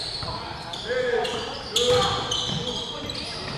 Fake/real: real